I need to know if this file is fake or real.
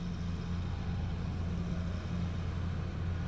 real